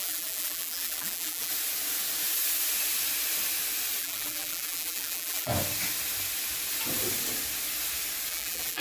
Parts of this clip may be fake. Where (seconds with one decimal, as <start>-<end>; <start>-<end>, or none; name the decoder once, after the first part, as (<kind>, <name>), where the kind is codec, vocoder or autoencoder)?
0.0-1.5 (vocoder, BigVGAN v2); 4.0-5.5; 8.3-8.8